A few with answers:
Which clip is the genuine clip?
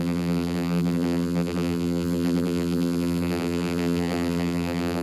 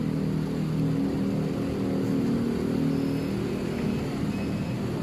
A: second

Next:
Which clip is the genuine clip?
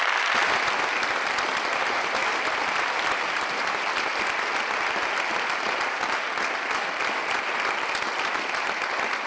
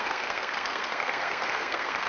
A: first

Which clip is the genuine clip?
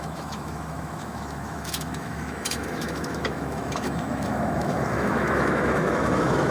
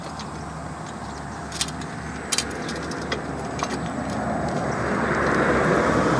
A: second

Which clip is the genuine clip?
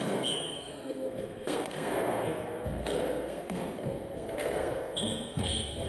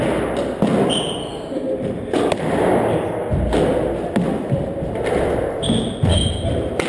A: second